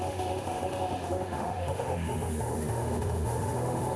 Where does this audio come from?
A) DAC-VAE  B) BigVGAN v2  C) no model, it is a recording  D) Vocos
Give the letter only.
A